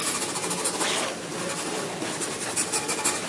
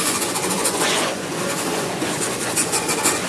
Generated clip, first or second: second